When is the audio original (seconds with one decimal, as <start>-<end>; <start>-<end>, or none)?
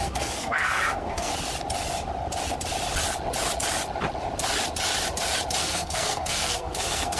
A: 1.3-5.6